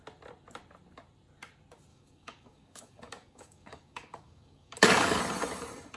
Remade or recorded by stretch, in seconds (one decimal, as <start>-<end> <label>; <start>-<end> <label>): 0.0-1.9 recorded; 1.9-5.2 remade; 5.2-6.0 recorded